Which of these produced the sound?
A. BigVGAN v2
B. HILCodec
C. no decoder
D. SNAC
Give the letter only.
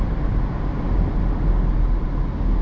C